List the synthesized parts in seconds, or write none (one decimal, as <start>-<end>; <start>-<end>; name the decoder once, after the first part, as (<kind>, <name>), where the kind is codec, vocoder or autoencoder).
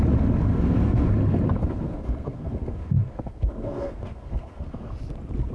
0.5-1.1 (codec, SNAC); 1.6-4.9